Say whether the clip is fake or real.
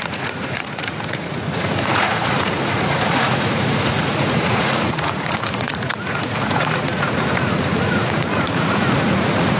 fake